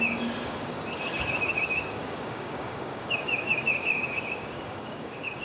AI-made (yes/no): yes